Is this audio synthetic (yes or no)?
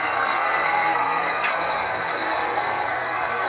yes